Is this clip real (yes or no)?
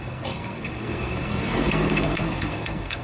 no